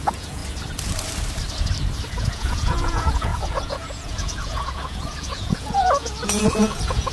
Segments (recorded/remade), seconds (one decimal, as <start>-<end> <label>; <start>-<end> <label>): 0.0-0.4 remade; 0.4-2.2 recorded; 2.2-7.1 remade